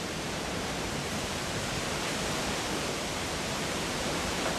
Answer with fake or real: fake